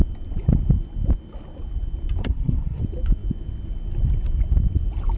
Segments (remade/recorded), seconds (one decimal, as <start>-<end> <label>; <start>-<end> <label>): 0.0-2.2 recorded; 2.2-2.8 remade; 2.8-5.2 recorded